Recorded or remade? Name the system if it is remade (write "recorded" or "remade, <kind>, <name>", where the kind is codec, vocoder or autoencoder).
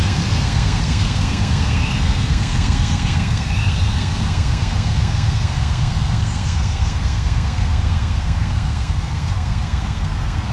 remade, codec, SNAC